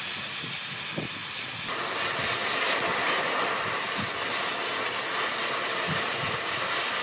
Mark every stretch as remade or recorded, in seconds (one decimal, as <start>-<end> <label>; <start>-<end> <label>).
0.0-1.2 recorded; 1.2-3.2 remade; 3.2-7.0 recorded